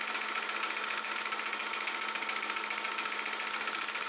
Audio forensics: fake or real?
real